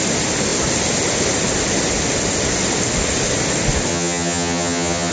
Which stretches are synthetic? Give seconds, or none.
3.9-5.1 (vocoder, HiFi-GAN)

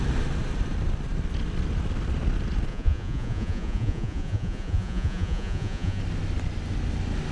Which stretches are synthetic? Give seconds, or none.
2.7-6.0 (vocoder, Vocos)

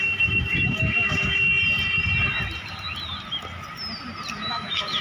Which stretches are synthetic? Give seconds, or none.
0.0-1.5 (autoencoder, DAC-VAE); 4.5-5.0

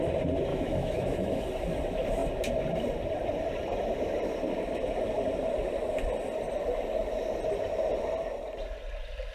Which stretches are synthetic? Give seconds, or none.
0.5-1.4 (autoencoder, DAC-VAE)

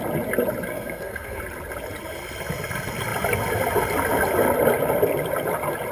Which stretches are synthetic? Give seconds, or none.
0.7-1.4 (codec, SNAC)